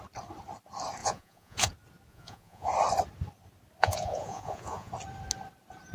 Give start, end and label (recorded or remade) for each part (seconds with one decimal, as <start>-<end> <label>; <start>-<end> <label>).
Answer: 0.0-1.0 recorded; 1.0-1.7 remade; 1.7-2.1 recorded; 2.1-2.7 remade; 2.7-3.8 recorded; 3.8-4.9 remade; 4.9-5.9 recorded